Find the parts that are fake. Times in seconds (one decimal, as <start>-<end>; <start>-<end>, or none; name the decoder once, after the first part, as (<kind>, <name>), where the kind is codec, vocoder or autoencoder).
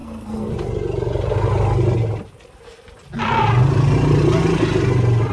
0.0-0.5 (codec, SNAC)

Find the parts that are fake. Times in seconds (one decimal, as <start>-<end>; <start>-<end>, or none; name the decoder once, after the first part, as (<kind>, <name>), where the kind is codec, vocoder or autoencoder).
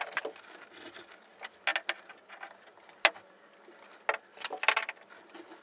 none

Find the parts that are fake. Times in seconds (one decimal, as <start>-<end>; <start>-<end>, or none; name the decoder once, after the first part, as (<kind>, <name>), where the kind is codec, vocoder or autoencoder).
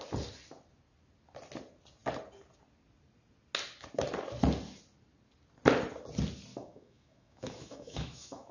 6.5-8.5 (autoencoder, DAC-VAE)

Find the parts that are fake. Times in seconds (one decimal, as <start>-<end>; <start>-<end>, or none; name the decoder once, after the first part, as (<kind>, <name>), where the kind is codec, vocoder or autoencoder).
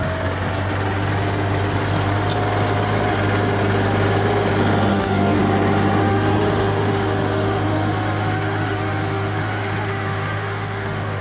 4.9-5.4 (autoencoder, DAC-VAE); 6.0-11.2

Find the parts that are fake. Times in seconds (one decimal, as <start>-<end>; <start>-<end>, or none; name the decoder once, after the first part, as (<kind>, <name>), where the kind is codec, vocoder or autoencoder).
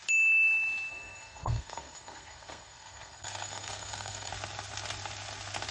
0.9-4.3 (codec, SNAC)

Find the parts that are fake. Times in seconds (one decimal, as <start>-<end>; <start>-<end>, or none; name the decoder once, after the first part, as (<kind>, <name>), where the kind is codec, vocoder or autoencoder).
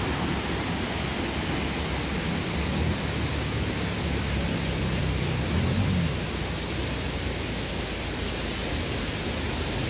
none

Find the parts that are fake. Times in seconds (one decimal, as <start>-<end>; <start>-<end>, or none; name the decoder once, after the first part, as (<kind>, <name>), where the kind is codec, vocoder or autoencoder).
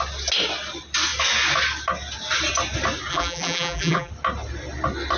3.1-4.1 (vocoder, BigVGAN v2)